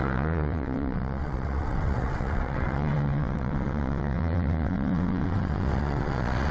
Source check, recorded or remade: remade